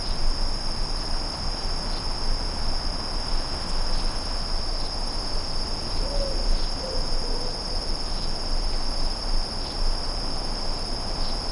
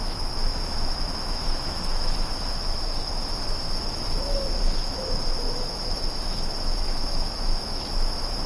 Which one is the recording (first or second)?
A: first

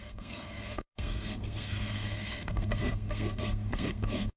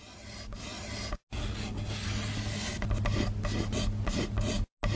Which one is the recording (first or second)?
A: second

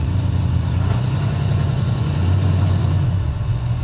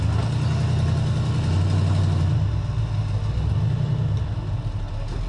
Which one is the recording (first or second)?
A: second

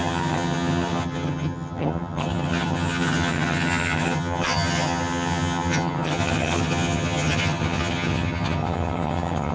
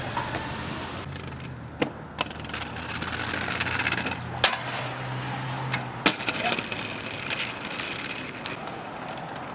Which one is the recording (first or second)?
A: second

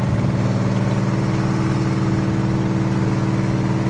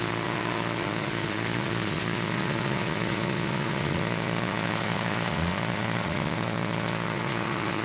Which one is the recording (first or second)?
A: first